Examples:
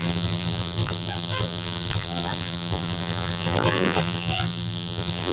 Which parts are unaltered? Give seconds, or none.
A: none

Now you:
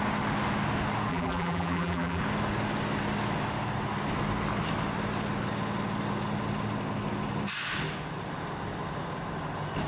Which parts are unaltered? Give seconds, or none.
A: 0.0-1.1; 2.2-9.9